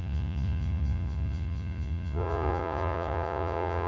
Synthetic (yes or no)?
yes